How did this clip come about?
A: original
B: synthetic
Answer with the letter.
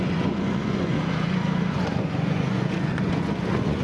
B